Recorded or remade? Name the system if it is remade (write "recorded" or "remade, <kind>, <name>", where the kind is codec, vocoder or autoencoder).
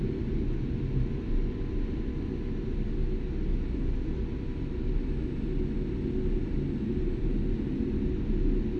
recorded